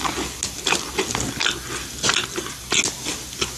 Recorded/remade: recorded